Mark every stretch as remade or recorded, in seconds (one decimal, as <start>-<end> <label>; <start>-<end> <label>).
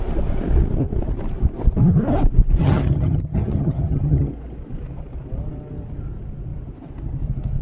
0.0-2.6 recorded; 2.6-4.3 remade; 4.3-7.6 recorded